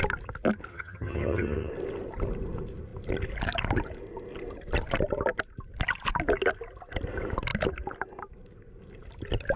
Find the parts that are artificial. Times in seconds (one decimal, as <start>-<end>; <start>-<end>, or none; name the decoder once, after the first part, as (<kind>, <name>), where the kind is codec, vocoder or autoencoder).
0.7-1.7 (vocoder, HiFi-GAN)